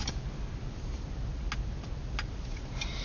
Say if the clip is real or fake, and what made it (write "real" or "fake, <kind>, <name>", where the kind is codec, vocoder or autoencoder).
real